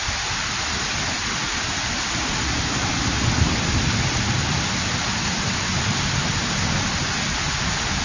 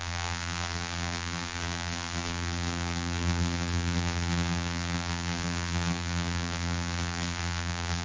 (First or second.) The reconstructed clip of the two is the second